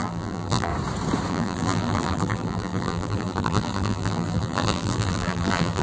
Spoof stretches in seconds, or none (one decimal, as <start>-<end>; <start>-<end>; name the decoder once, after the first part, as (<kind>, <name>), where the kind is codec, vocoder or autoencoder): 0.0-0.7 (vocoder, BigVGAN v2); 1.3-5.8